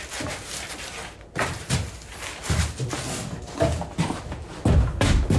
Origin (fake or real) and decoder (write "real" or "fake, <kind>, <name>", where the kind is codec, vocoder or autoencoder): real